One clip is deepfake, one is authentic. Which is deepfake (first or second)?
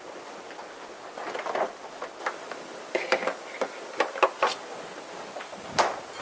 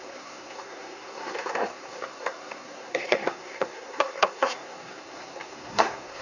second